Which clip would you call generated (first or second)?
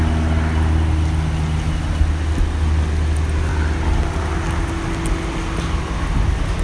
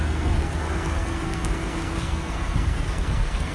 second